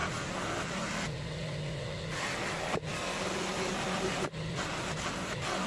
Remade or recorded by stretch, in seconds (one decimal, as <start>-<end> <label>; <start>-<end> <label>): 0.0-5.7 recorded